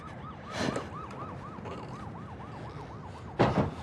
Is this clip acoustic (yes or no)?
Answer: yes